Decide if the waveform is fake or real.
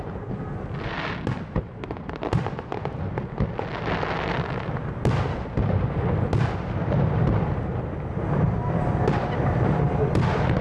real